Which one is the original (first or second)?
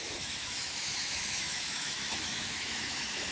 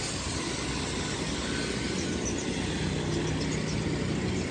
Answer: second